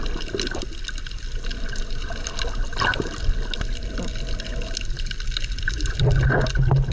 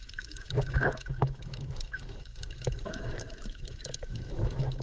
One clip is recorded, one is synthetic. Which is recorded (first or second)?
first